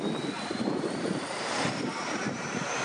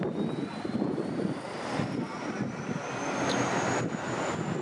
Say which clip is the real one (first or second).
second